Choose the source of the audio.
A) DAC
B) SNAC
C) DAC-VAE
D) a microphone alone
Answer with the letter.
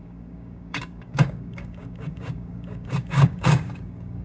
A